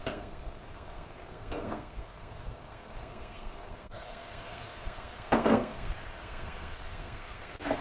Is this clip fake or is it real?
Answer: fake